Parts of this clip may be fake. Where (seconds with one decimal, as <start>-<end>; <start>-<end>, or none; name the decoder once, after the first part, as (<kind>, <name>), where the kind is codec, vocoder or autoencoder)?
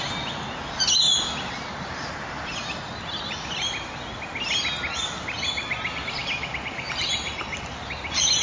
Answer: none